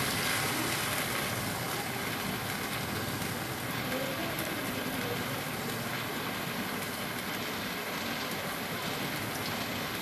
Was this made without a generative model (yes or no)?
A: yes